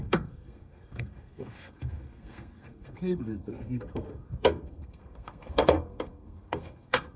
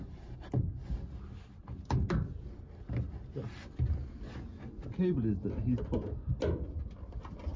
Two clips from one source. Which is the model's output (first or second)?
first